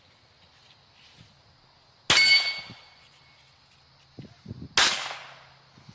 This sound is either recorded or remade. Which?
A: recorded